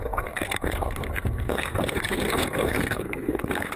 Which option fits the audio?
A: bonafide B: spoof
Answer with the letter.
B